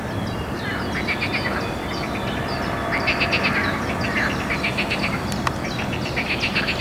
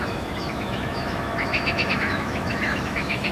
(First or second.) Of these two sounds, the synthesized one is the second